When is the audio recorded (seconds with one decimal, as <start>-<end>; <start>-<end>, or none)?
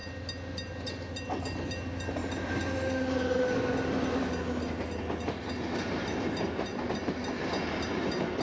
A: 0.0-8.4